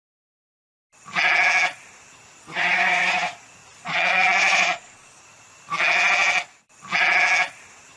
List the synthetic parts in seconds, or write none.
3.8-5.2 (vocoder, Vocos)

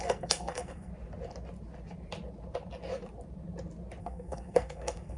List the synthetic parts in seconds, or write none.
0.0-0.9 (codec, SNAC); 4.0-5.2

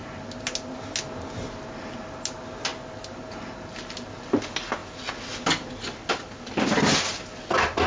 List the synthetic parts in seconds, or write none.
none